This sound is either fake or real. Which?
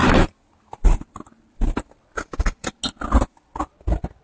real